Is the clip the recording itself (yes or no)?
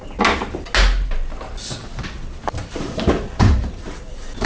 yes